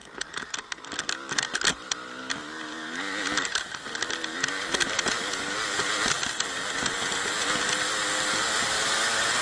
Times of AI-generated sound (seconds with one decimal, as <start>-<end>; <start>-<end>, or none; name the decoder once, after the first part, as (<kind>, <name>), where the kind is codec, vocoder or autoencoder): none